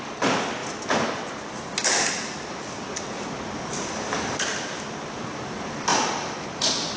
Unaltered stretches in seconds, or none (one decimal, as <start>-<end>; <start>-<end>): 0.0-7.0